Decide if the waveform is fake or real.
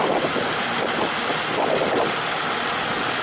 real